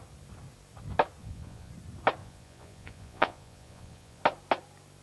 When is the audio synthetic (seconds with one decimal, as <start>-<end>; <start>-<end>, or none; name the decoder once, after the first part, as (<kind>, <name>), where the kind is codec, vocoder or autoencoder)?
1.2-1.7 (vocoder, Vocos); 2.2-4.2